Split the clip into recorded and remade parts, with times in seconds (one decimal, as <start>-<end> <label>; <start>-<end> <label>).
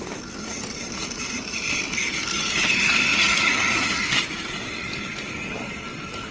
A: 0.0-3.1 recorded; 3.1-4.0 remade; 4.0-6.3 recorded